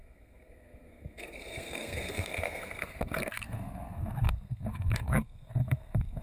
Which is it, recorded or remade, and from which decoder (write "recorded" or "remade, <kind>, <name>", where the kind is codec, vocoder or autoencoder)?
remade, codec, SNAC